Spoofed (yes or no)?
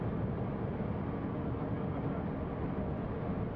no